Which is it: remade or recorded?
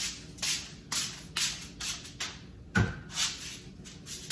recorded